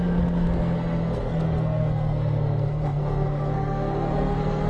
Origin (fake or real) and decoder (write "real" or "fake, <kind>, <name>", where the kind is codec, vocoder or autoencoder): fake, codec, SNAC